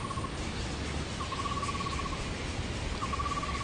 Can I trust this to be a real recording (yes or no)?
yes